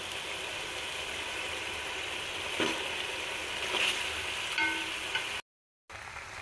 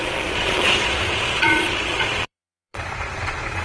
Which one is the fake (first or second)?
second